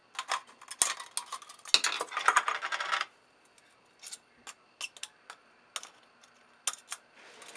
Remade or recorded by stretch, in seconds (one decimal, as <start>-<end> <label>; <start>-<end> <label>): 0.0-7.6 recorded